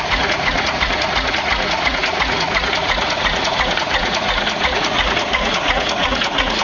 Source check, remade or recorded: remade